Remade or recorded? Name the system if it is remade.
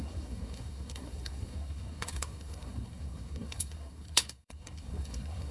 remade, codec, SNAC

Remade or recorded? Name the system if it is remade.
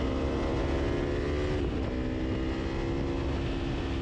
recorded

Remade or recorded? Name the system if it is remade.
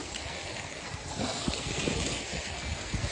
remade, codec, SNAC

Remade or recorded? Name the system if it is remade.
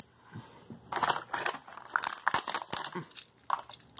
recorded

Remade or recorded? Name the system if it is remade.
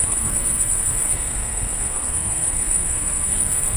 remade, codec, SNAC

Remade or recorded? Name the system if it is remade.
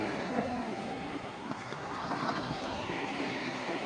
remade, codec, SNAC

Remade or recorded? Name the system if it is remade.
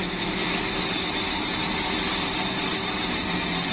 recorded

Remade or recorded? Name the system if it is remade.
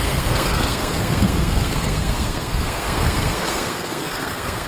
remade, codec, SNAC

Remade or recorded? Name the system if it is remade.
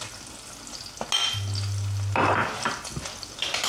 recorded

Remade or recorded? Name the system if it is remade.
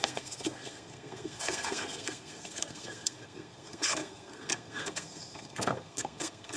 remade, codec, SNAC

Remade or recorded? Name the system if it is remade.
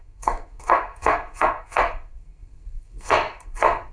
remade, codec, SNAC